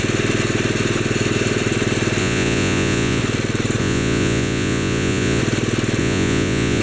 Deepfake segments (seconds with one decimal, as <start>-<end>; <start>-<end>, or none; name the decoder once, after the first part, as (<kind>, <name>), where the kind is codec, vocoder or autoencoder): 2.2-3.2 (vocoder, Vocos); 3.8-5.4; 6.0-6.8